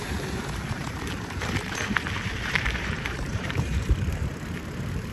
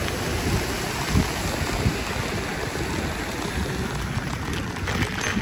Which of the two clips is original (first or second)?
second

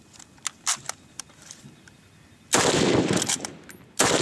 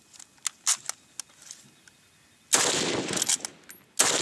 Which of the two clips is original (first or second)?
second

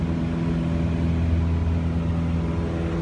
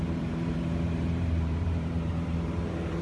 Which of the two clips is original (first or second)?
first